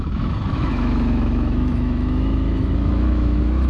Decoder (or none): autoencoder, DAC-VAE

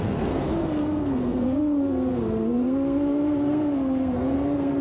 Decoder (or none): codec, SNAC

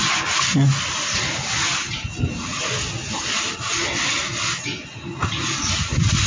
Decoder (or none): none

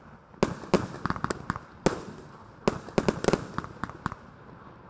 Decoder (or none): none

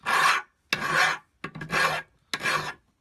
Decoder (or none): none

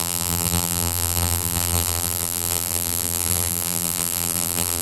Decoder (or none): vocoder, BigVGAN v2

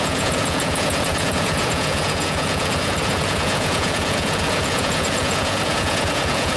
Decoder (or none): vocoder, Vocos